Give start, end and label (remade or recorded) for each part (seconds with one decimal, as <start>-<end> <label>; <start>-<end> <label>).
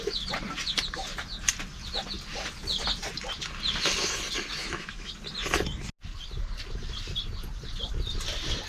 0.0-4.6 recorded; 4.6-5.1 remade; 5.1-8.7 recorded